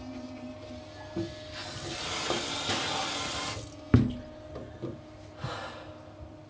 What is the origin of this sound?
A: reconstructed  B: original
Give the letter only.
B